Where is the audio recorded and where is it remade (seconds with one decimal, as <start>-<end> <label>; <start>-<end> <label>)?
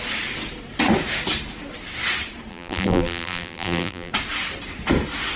0.0-2.5 recorded; 2.5-4.1 remade; 4.1-5.4 recorded